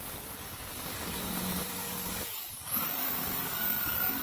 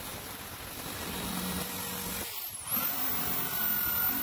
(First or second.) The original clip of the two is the second